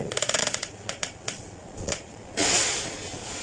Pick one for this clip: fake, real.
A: fake